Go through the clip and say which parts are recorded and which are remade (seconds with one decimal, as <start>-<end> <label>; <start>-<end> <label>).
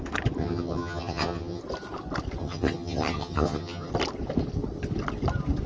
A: 0.0-0.4 recorded; 0.4-1.6 remade; 1.6-2.4 recorded; 2.4-3.9 remade; 3.9-5.7 recorded